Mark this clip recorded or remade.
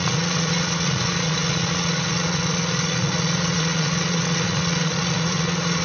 remade